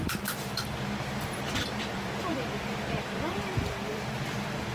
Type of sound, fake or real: fake